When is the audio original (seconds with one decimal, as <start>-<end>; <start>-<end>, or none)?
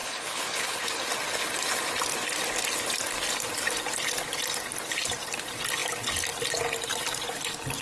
1.0-7.8